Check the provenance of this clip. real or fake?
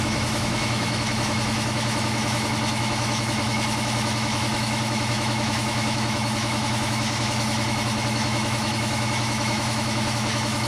fake